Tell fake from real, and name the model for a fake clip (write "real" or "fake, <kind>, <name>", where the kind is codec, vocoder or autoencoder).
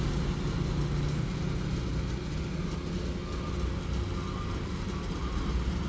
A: real